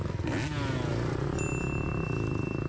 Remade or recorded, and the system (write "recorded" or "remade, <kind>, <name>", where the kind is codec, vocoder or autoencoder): recorded